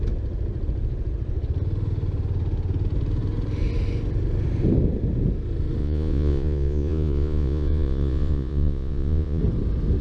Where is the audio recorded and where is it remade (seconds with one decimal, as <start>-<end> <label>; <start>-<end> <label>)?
0.0-5.8 recorded; 5.8-9.4 remade; 9.4-10.0 recorded

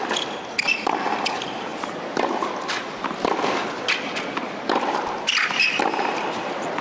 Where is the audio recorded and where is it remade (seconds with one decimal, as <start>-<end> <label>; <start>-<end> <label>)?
0.0-6.8 recorded

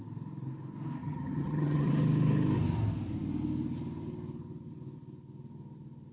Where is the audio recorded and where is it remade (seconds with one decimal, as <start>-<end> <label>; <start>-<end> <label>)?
0.0-1.0 recorded; 1.0-1.9 remade; 1.9-6.1 recorded